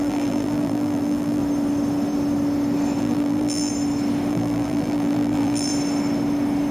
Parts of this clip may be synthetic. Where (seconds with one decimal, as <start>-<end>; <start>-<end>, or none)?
0.0-1.4; 3.0-3.7; 4.3-5.7